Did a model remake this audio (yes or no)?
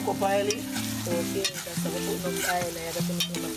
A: no